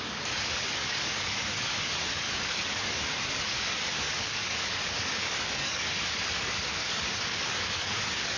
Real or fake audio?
fake